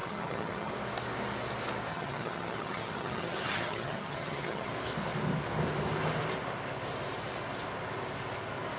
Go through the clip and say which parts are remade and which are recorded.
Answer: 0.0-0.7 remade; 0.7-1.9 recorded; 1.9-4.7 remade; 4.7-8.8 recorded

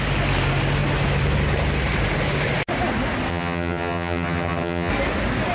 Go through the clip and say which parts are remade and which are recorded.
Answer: 0.0-3.3 recorded; 3.3-4.9 remade; 4.9-5.5 recorded

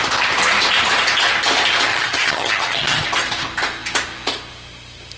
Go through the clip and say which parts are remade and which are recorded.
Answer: 0.0-1.9 recorded; 1.9-3.0 remade; 3.0-5.2 recorded

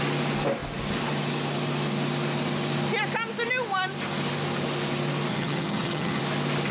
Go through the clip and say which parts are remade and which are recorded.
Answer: 0.0-5.3 recorded; 5.3-6.2 remade; 6.2-6.7 recorded

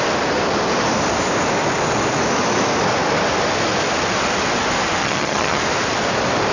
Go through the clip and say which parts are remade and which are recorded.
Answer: 0.0-5.0 recorded; 5.0-5.6 remade; 5.6-6.5 recorded

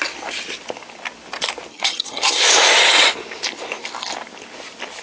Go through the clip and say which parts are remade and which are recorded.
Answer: 0.0-1.7 recorded; 1.7-2.4 remade; 2.4-5.0 recorded